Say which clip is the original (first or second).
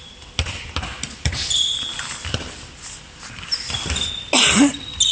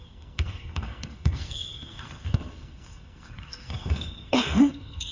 first